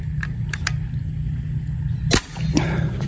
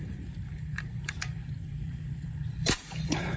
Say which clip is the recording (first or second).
first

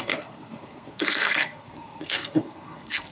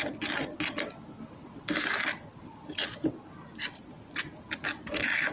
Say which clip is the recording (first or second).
second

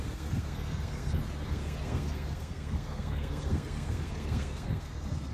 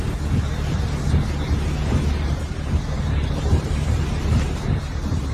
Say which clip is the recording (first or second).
second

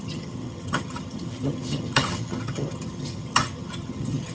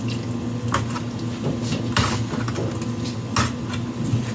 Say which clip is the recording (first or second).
second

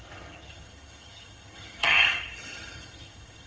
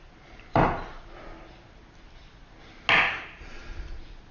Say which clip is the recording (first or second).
second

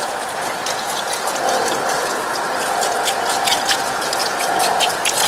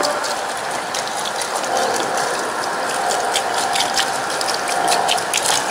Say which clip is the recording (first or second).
second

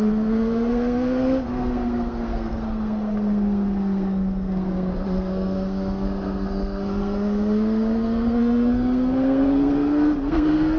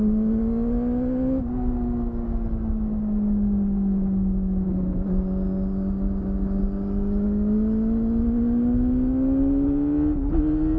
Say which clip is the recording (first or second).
second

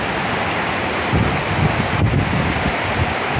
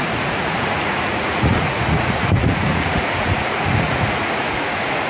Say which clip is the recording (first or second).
first